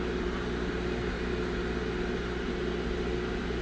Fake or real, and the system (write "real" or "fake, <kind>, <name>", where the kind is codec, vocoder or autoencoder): real